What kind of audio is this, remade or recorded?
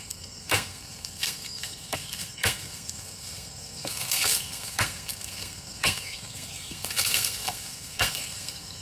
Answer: remade